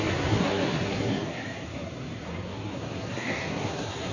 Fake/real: fake